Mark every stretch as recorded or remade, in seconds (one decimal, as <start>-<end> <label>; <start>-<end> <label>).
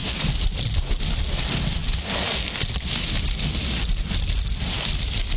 0.0-5.4 recorded